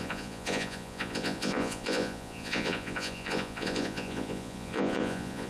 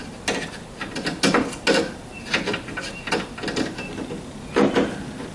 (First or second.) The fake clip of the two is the first